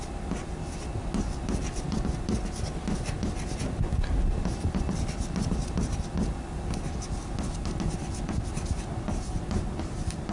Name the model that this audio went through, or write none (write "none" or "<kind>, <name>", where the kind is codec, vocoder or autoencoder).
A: none